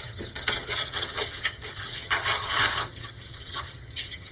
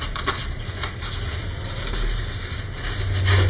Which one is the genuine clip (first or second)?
second